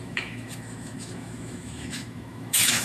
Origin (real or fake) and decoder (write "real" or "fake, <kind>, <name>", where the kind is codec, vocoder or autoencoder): fake, autoencoder, DAC-VAE